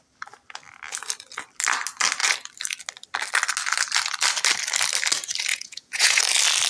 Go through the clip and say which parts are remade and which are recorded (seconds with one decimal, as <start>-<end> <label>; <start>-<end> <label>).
0.0-5.5 recorded; 5.5-6.2 remade; 6.2-6.7 recorded